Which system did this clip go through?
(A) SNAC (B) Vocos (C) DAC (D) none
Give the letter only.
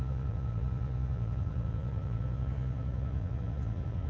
B